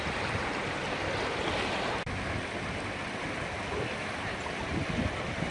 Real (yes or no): yes